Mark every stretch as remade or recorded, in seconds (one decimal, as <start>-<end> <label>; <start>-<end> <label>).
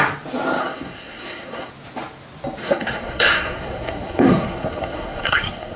0.0-0.6 recorded; 0.6-1.7 remade; 1.7-2.6 recorded; 2.6-5.8 remade